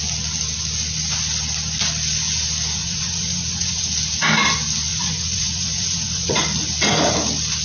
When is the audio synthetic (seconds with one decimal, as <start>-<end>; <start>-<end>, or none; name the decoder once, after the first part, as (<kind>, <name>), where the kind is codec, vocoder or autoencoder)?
2.8-3.9 (vocoder, Vocos); 4.9-6.4